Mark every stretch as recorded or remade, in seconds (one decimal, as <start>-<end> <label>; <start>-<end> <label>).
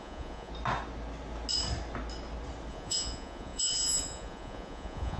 0.0-0.5 remade; 0.5-2.7 recorded; 2.7-5.2 remade